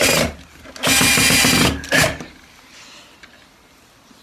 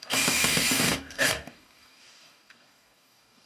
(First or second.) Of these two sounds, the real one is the first